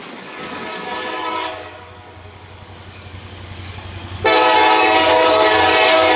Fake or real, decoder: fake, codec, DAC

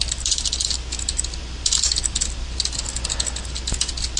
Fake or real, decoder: real